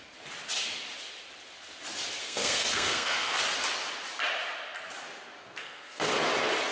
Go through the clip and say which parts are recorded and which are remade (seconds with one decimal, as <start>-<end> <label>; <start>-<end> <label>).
0.0-2.2 recorded; 2.2-3.4 remade; 3.4-5.4 recorded; 5.4-6.1 remade; 6.1-6.7 recorded